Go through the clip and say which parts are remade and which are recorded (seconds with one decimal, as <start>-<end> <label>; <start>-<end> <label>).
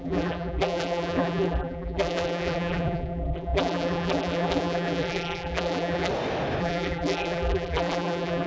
0.0-6.1 remade; 6.1-6.6 recorded; 6.6-8.5 remade